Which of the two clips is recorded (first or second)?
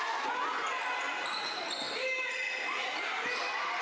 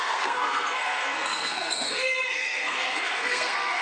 first